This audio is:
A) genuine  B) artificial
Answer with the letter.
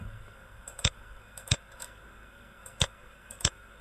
B